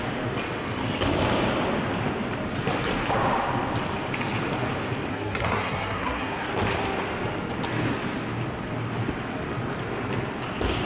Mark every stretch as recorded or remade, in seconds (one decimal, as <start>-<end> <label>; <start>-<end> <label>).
0.0-5.1 recorded; 5.1-6.5 remade; 6.5-10.9 recorded